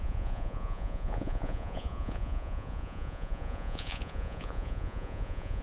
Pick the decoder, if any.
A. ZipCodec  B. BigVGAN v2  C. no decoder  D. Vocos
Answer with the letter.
D